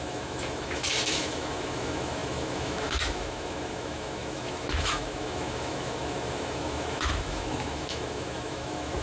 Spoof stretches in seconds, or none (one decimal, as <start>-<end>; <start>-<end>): 0.0-9.0